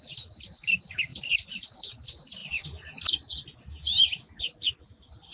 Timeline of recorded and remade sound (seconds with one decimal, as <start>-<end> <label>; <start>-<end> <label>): 0.0-5.3 recorded